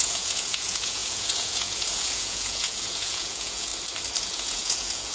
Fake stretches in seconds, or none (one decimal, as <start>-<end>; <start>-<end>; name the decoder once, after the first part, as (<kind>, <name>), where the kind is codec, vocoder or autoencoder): 0.0-3.7 (vocoder, Vocos); 4.2-5.1